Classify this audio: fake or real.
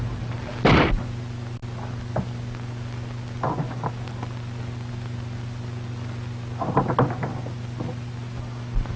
real